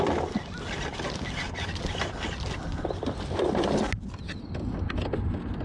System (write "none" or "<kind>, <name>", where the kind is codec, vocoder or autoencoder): none